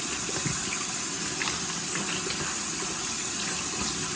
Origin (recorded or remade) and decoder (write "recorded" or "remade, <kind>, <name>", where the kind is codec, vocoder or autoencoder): recorded